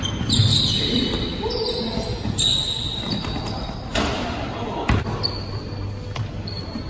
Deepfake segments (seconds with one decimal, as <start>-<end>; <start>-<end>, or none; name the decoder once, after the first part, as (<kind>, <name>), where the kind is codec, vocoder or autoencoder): 3.9-4.5 (vocoder, BigVGAN v2)